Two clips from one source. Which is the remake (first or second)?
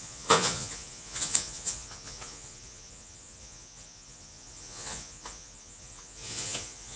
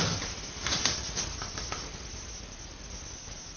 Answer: first